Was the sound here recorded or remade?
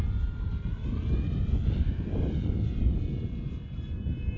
recorded